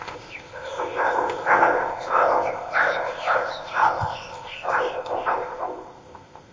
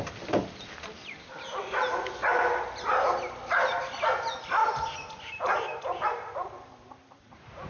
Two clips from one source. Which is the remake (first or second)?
first